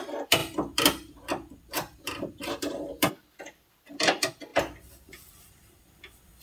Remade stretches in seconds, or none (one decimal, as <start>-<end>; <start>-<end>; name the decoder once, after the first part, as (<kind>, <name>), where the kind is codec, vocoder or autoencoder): 0.0-6.4 (vocoder, BigVGAN v2)